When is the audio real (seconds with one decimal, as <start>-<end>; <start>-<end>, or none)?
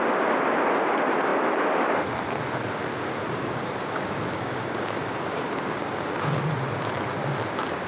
0.0-2.9; 6.4-7.9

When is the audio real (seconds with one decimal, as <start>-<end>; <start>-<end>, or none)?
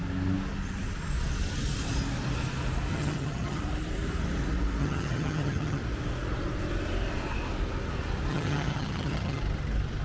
0.0-2.9; 3.6-4.8; 5.8-8.3; 9.4-10.0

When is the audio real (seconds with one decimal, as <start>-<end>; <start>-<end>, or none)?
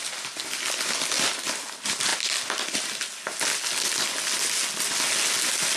0.0-5.8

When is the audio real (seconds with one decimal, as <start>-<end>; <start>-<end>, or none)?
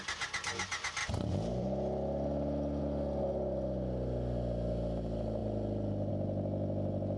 0.0-1.0; 2.8-7.2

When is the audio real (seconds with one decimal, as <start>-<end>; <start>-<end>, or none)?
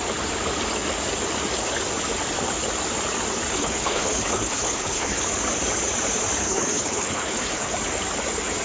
0.0-3.5; 5.2-6.4; 7.7-8.6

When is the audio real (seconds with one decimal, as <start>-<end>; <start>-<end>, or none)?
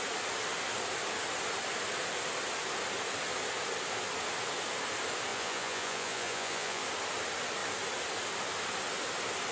0.0-5.3; 6.8-9.5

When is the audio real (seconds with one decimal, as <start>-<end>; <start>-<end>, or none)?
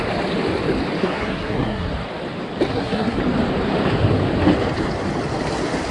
0.0-1.0; 1.9-2.7; 3.2-5.9